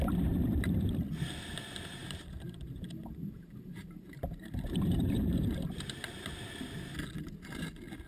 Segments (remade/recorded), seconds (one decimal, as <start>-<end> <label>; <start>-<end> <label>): 0.0-2.0 recorded; 2.0-5.8 remade; 5.8-8.1 recorded